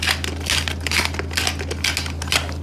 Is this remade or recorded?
recorded